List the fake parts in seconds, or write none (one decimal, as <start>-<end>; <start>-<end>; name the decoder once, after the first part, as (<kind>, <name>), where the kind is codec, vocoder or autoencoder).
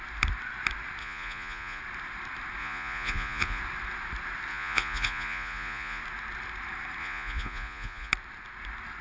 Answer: 1.0-1.8 (vocoder, Vocos); 2.6-3.6; 4.5-6.0; 7.0-8.1